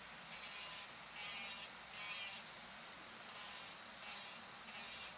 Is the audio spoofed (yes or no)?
no